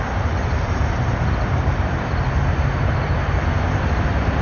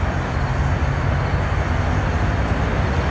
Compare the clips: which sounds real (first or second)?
second